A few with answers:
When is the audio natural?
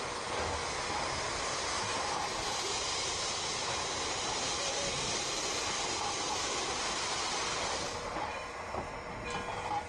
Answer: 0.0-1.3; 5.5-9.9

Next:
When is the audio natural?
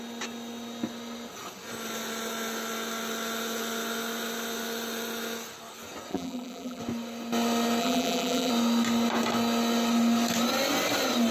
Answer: 0.0-6.1; 6.8-7.8; 8.5-11.3